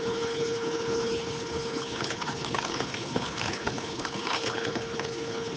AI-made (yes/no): yes